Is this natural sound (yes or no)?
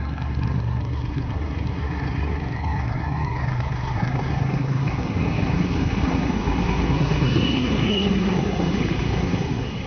no